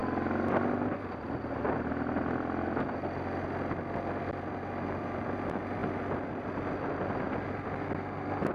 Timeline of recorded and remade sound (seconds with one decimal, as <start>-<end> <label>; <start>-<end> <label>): 0.0-8.5 recorded